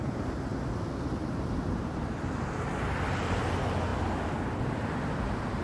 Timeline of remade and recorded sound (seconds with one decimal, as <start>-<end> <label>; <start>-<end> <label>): 0.0-0.5 remade; 0.5-3.2 recorded; 3.2-5.6 remade